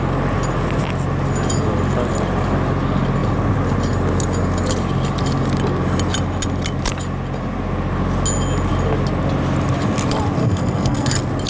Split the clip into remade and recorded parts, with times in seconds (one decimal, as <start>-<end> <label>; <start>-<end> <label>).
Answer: 0.0-10.4 recorded; 10.4-11.1 remade; 11.1-11.5 recorded